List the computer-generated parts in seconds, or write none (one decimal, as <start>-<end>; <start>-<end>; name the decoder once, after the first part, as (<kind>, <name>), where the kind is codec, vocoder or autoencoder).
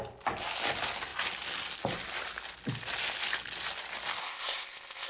4.2-5.1 (codec, ZipCodec)